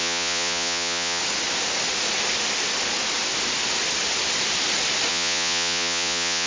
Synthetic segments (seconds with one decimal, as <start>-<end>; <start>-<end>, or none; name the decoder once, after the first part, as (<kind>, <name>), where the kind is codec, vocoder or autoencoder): 0.0-1.2 (vocoder, Vocos); 5.1-6.5

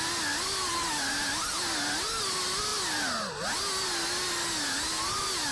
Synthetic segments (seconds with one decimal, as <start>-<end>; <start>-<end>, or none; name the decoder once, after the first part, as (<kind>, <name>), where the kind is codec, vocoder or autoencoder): none

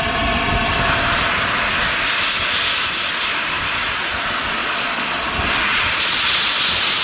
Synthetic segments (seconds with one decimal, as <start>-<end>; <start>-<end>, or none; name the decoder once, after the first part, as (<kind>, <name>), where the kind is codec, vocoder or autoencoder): 4.6-5.3 (vocoder, Vocos); 5.7-6.6

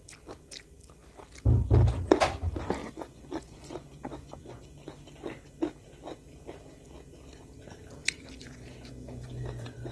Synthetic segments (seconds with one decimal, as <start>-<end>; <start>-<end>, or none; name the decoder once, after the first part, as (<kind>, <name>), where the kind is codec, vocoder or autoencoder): 2.8-4.6 (vocoder, Vocos); 8.0-9.9

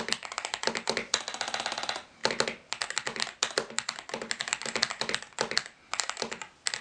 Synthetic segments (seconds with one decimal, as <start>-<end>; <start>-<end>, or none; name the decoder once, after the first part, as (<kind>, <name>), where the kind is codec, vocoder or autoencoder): none